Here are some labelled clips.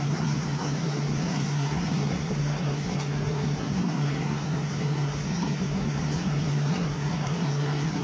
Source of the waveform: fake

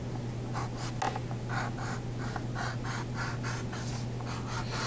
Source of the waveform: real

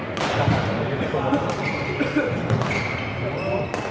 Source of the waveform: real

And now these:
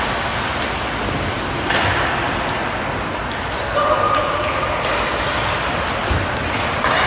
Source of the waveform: real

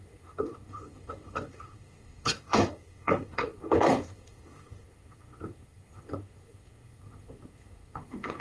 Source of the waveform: fake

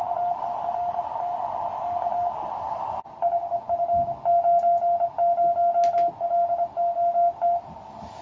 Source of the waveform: real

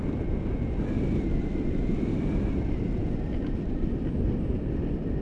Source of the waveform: real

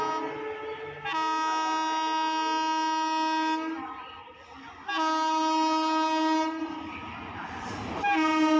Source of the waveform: real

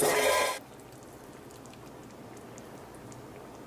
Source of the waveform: real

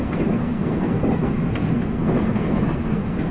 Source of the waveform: fake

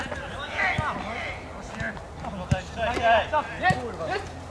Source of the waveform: real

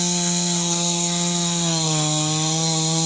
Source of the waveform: fake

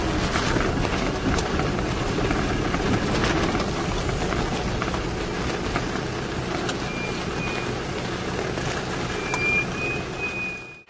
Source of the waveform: real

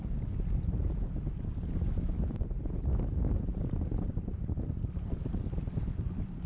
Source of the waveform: real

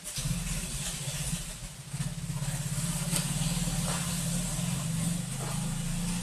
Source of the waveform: real